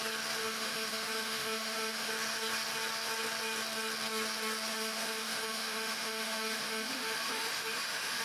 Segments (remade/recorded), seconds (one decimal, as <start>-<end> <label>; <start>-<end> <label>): 0.0-0.4 recorded; 0.4-2.1 remade; 2.1-4.7 recorded; 4.7-8.2 remade